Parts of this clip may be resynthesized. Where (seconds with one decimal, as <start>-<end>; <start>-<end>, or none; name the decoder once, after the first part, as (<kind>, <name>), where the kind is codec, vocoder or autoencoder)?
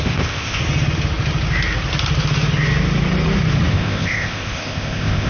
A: 0.0-0.6 (codec, ZipCodec); 3.7-5.3